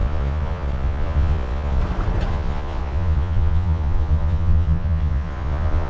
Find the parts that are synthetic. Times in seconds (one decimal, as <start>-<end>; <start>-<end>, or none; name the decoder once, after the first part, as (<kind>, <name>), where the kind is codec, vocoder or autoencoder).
0.0-1.8 (vocoder, Vocos); 2.3-5.9